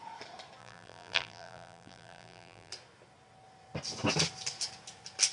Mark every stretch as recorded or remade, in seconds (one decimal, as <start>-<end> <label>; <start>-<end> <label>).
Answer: 0.0-0.6 recorded; 0.6-2.7 remade; 2.7-5.3 recorded